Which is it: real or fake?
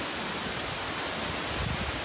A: real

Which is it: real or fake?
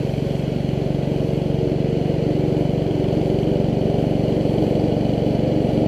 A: real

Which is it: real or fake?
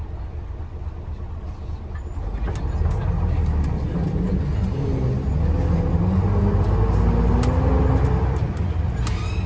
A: real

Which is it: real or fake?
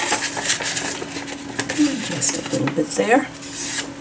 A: real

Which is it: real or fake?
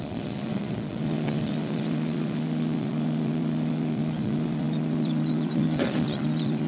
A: fake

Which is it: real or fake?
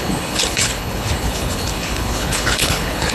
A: fake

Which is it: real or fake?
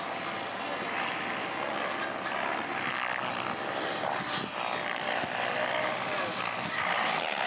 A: real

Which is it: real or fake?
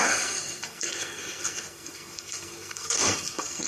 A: fake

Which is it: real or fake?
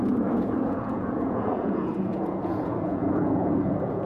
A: fake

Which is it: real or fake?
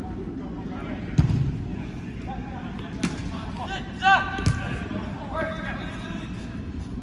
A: real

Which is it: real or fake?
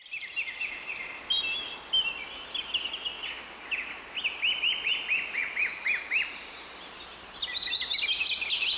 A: real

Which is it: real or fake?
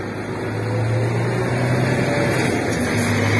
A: real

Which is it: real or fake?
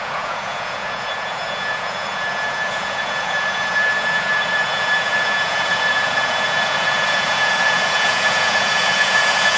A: fake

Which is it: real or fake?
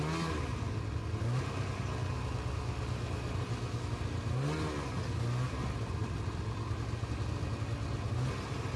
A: real